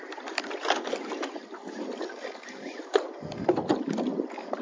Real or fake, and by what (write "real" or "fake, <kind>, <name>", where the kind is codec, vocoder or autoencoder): real